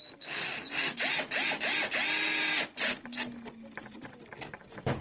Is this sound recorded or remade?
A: recorded